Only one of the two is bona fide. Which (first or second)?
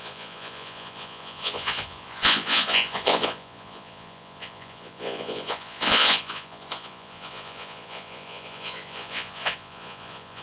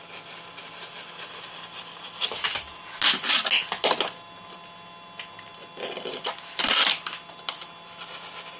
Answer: second